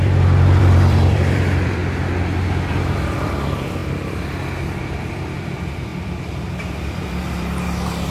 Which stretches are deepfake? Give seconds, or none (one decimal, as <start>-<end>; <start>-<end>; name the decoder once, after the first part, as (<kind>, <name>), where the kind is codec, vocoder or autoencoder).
0.0-1.8 (vocoder, BigVGAN v2); 2.7-3.8; 4.8-8.1